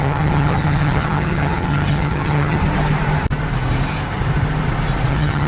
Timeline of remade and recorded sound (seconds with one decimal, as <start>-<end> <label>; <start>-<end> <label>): 0.0-2.6 remade; 2.6-5.1 recorded; 5.1-5.5 remade